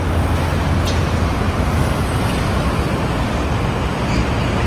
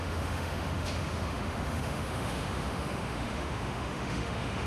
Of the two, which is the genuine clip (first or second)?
first